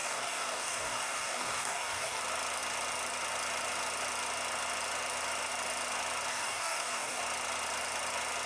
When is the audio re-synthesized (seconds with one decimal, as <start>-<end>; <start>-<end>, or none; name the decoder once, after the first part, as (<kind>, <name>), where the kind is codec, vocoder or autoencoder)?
0.0-2.2 (codec, DAC); 6.3-7.2